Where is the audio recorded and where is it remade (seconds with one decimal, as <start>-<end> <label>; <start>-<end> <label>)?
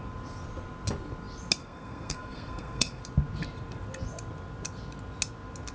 0.0-1.6 recorded; 1.6-3.0 remade; 3.0-5.7 recorded